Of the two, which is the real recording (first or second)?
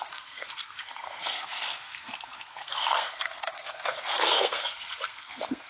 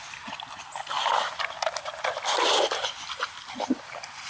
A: second